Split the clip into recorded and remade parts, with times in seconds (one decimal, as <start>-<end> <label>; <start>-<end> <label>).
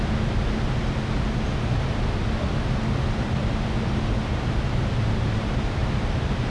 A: 0.0-5.8 recorded; 5.8-6.5 remade